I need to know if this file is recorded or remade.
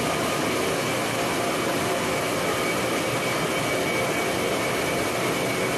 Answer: recorded